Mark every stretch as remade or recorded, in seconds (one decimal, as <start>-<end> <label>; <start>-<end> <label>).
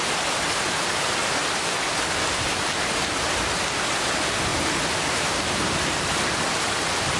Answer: 0.0-4.5 recorded; 4.5-5.1 remade; 5.1-7.2 recorded